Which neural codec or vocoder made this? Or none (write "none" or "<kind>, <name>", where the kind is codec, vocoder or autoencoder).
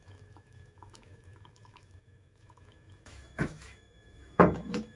autoencoder, DAC-VAE